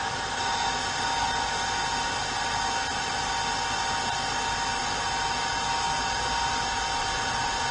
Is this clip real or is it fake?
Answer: real